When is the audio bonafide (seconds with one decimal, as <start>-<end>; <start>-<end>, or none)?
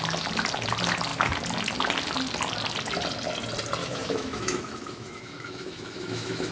0.0-3.8